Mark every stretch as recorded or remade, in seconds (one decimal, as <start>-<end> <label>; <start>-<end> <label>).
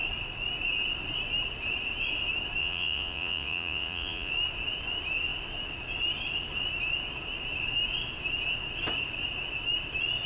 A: 0.0-2.6 recorded; 2.6-4.3 remade; 4.3-10.3 recorded